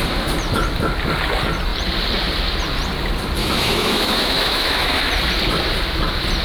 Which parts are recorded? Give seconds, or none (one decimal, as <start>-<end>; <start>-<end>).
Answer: 0.0-3.4; 5.1-6.4

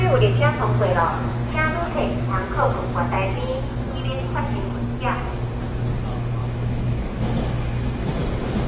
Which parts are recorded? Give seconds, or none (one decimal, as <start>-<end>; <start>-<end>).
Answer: 0.0-6.4; 8.1-8.7

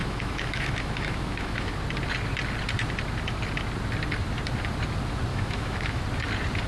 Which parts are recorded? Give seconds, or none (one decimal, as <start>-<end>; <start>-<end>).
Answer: 1.7-5.3; 6.0-6.7

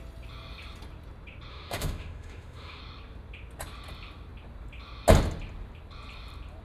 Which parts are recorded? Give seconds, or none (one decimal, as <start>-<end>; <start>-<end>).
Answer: 0.0-1.5; 2.8-6.6

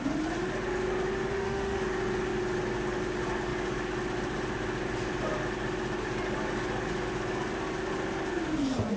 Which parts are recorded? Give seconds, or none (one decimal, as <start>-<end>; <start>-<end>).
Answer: 0.0-1.3; 1.8-9.0

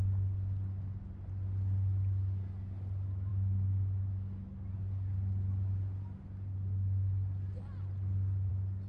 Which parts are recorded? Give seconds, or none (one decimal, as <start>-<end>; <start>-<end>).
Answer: 0.0-8.9

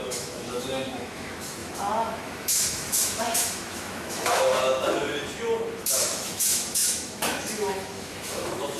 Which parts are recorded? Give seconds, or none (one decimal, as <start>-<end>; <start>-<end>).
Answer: 4.5-5.9

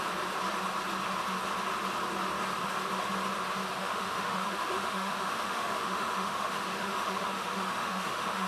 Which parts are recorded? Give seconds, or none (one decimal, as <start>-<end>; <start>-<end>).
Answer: 0.0-3.8